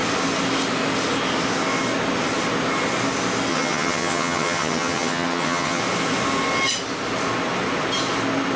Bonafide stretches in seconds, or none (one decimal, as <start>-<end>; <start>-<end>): 0.0-3.5; 5.8-8.6